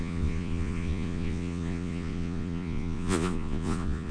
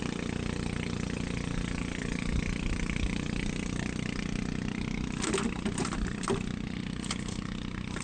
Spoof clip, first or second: first